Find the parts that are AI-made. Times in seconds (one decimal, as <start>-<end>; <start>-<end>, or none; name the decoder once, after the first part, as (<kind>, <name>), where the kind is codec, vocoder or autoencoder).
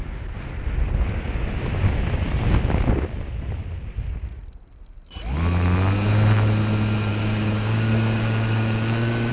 7.1-9.3 (codec, DAC)